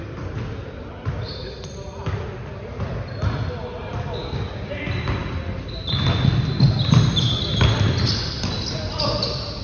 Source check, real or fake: real